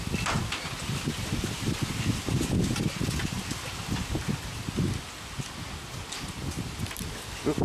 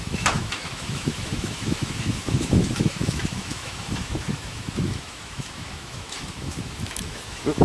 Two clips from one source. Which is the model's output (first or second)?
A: second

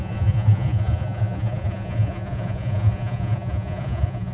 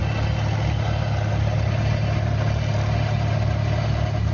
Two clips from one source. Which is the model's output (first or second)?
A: first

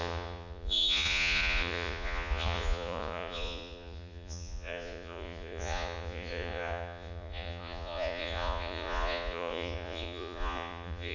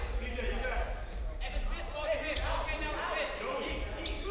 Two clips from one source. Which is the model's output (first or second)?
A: first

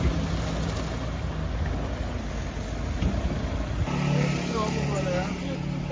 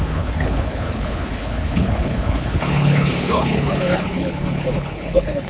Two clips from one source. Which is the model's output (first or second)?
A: second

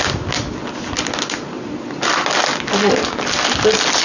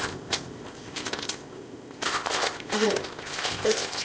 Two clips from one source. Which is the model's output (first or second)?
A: second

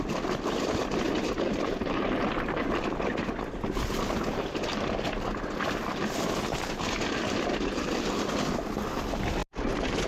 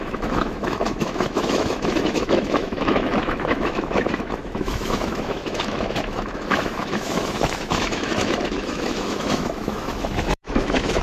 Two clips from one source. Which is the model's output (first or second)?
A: second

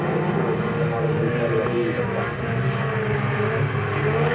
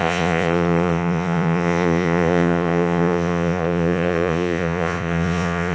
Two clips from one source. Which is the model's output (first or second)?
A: second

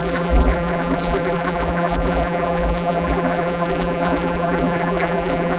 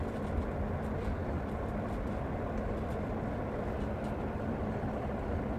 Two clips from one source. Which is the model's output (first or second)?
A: first